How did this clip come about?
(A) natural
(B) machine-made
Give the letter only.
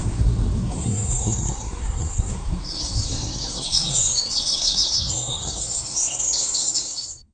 B